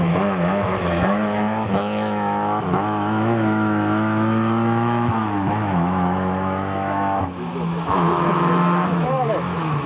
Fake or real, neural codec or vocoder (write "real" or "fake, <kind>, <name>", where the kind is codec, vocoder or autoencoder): fake, autoencoder, DAC-VAE